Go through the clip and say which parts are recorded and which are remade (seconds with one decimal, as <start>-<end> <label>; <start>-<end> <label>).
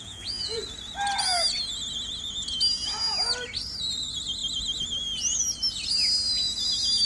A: 0.0-0.6 remade; 0.6-7.1 recorded